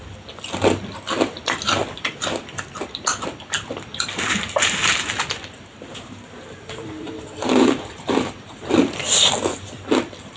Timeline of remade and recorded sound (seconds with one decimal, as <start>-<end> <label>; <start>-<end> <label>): 0.0-5.7 recorded; 5.7-8.8 remade; 8.8-10.4 recorded